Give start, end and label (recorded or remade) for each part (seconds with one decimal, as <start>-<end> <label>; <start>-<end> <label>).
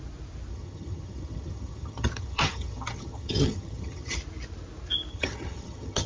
0.0-0.5 recorded; 0.5-4.2 remade; 4.2-5.1 recorded; 5.1-6.1 remade